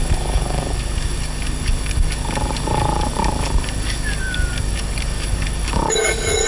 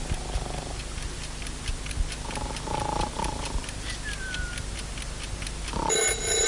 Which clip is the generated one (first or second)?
first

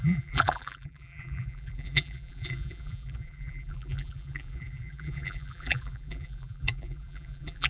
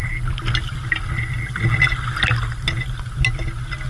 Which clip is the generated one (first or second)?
first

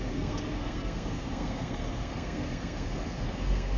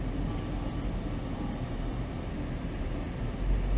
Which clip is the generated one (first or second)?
first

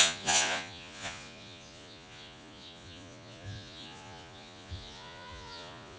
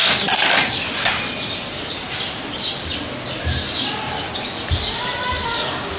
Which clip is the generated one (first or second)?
first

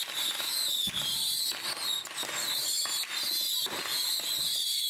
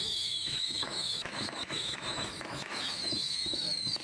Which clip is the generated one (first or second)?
second